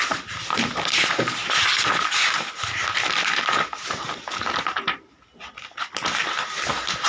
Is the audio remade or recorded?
recorded